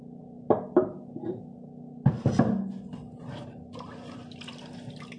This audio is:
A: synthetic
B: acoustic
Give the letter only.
B